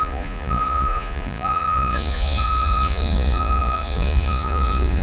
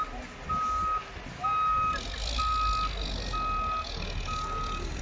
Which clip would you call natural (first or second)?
second